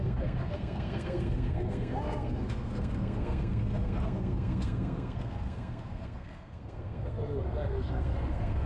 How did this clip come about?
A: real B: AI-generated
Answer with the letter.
B